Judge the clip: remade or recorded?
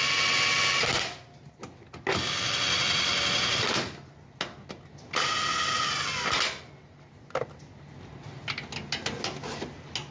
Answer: recorded